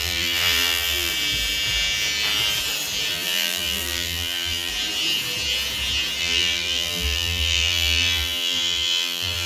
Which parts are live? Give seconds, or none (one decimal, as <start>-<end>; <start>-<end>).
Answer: 1.1-3.1; 4.7-6.2